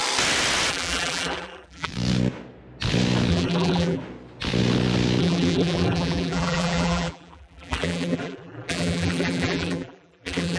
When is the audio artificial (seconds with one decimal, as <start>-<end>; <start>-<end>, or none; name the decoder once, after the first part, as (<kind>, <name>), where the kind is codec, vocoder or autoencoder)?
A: 0.7-1.9 (vocoder, BigVGAN v2); 3.3-4.0; 5.2-10.6